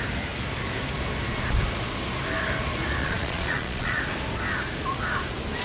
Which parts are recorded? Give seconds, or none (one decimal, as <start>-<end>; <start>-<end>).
0.0-3.0; 4.0-5.6